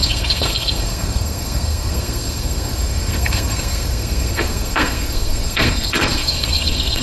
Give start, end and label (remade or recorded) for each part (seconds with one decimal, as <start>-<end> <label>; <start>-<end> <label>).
0.0-7.0 remade